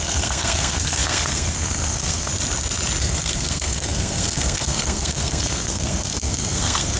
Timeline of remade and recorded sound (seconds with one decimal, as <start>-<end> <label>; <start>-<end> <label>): 0.0-2.3 remade; 2.3-3.0 recorded; 3.0-7.0 remade